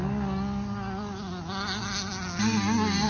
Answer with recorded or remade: recorded